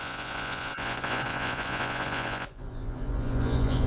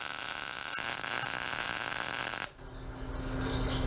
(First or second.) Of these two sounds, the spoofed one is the first